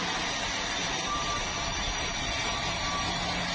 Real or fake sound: real